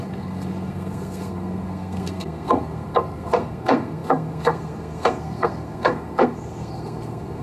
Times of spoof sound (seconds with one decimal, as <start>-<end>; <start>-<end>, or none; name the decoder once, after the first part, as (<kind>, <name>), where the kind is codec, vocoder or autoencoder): 0.0-7.4 (codec, SNAC)